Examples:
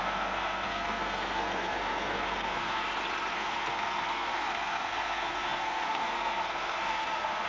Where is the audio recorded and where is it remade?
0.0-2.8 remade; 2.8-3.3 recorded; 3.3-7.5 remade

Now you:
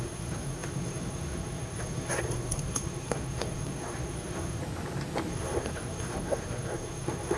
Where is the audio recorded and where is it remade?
0.0-4.6 remade; 4.6-5.3 recorded; 5.3-7.4 remade

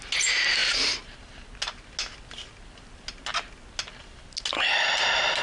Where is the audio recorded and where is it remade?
0.0-5.4 recorded

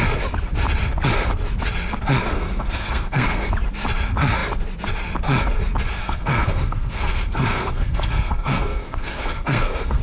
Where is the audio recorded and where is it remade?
0.0-2.3 recorded; 2.3-3.5 remade; 3.5-6.0 recorded; 6.0-10.0 remade

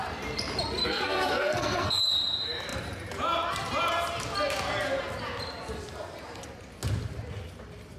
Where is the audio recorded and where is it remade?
0.0-0.8 recorded; 0.8-2.0 remade; 2.0-8.0 recorded